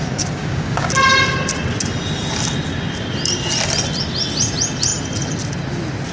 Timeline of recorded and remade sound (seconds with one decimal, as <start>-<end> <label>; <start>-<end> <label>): 0.0-0.9 remade; 0.9-6.1 recorded